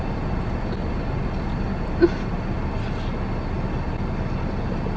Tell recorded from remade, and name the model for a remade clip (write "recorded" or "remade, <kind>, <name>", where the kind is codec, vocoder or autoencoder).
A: recorded